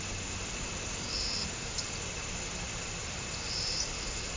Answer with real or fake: real